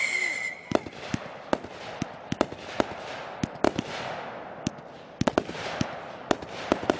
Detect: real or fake real